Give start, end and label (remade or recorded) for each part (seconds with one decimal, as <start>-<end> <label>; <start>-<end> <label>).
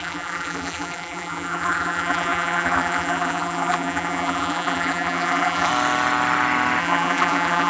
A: 0.0-5.7 remade; 5.7-6.8 recorded; 6.8-7.7 remade